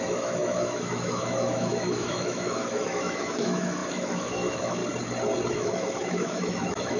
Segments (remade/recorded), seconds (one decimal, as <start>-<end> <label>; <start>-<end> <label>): 0.0-4.8 remade; 4.8-5.5 recorded; 5.5-7.0 remade